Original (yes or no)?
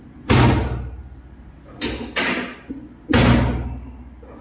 yes